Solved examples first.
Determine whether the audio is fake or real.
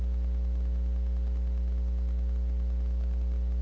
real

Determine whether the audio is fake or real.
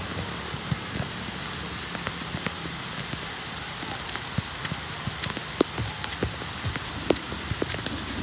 real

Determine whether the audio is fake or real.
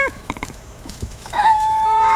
fake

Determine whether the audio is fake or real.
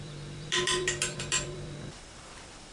fake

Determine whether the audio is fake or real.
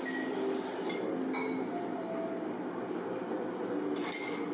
real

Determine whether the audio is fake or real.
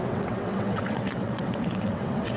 fake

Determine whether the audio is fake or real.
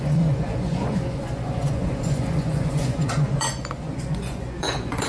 fake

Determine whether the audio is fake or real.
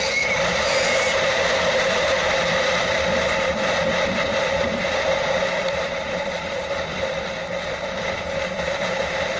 fake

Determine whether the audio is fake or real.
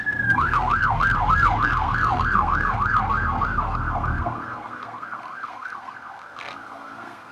fake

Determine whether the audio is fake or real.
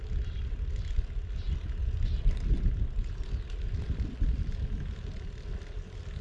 real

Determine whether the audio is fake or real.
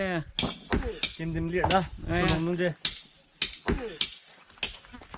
real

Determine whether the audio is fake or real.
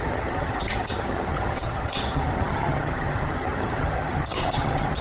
fake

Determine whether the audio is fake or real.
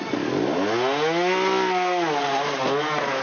real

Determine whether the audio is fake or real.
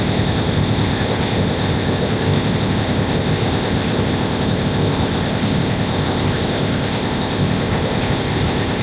fake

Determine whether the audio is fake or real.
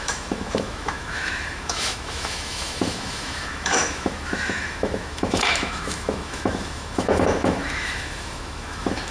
fake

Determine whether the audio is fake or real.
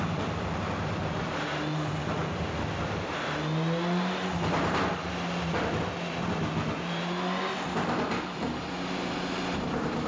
real